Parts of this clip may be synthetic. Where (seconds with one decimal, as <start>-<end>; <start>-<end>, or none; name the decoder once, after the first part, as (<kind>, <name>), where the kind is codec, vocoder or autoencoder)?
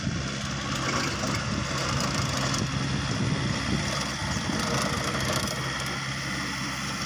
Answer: none